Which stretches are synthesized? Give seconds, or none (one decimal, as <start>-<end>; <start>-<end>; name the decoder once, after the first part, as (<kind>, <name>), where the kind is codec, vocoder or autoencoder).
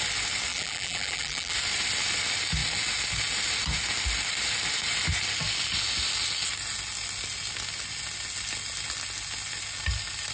0.5-1.5 (vocoder, BigVGAN v2)